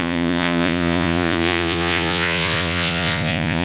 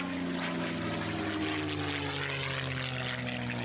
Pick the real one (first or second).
second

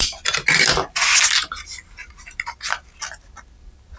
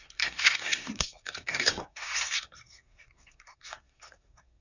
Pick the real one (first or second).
first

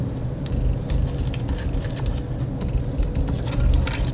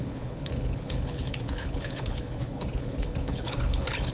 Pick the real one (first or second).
first